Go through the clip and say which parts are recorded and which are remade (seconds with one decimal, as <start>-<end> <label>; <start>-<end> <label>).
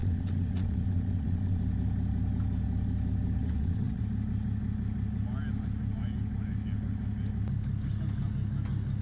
0.0-1.6 remade; 1.6-3.4 recorded; 3.4-4.0 remade; 4.0-9.0 recorded